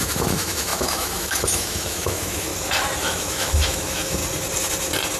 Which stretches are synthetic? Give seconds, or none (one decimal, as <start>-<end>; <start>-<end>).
0.0-2.5; 3.0-4.2